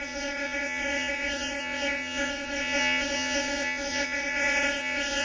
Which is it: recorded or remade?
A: remade